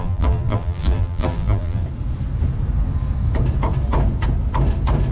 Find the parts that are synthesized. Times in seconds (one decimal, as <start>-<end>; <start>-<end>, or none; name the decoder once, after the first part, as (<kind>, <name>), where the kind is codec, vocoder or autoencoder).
0.0-1.8 (vocoder, BigVGAN v2)